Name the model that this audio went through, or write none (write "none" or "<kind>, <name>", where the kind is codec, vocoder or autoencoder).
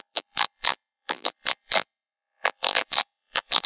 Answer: vocoder, BigVGAN v2